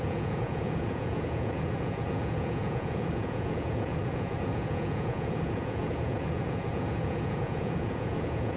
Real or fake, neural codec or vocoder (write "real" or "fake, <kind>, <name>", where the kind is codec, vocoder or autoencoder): fake, vocoder, Vocos